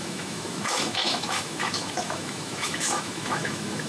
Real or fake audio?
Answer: fake